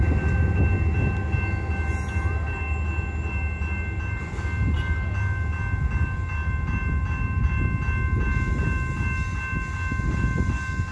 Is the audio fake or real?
real